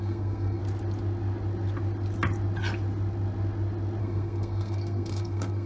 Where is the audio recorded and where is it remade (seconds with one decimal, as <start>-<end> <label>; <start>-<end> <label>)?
0.0-0.6 remade; 0.6-4.0 recorded; 4.0-5.7 remade